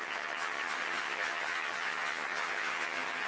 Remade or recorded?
remade